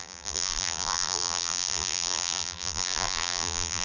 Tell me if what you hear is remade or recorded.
remade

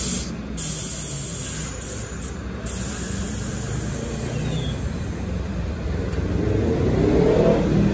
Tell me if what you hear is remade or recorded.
recorded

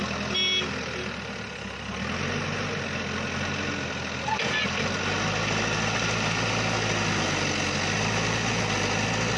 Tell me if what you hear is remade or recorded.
recorded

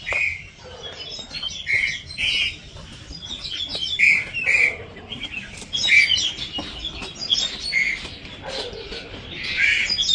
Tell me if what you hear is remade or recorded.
remade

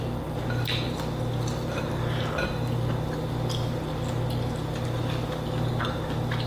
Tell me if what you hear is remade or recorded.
recorded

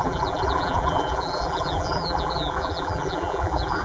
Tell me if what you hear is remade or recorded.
remade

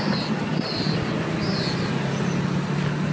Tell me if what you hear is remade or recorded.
recorded